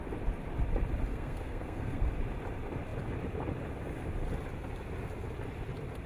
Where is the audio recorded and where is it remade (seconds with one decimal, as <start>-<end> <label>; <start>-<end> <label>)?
0.0-1.1 recorded; 1.1-2.1 remade; 2.1-6.1 recorded